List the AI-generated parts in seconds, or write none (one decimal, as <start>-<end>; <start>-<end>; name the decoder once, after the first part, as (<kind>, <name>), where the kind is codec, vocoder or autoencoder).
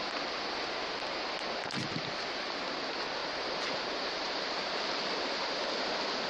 3.2-5.7 (vocoder, BigVGAN v2)